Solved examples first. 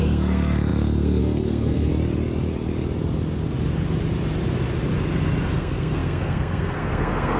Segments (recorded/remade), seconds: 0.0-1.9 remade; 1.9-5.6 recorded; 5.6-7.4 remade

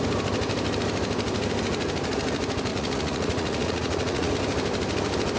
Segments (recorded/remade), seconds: 0.0-2.7 recorded; 2.7-4.3 remade; 4.3-5.4 recorded

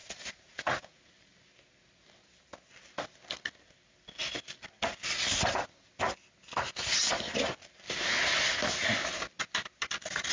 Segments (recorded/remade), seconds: 0.0-1.1 remade; 1.1-10.3 recorded

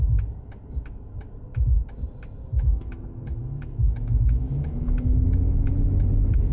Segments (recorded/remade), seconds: 0.0-2.5 recorded; 2.5-5.7 remade; 5.7-6.5 recorded

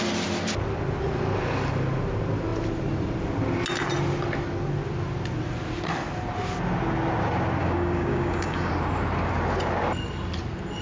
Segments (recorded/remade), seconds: 0.0-7.6 recorded; 7.6-8.7 remade; 8.7-10.8 recorded